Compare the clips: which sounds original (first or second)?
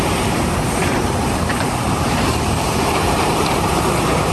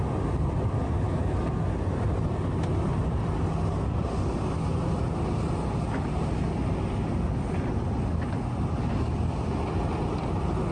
second